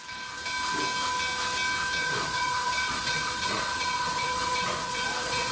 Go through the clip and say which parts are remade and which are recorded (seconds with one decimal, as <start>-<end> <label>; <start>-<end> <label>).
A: 0.0-2.0 recorded; 2.0-5.5 remade